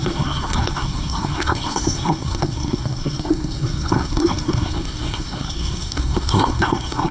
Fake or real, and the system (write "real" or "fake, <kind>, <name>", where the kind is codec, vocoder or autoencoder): fake, codec, SNAC